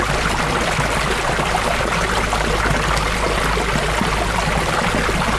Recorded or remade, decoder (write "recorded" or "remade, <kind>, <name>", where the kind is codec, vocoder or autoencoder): recorded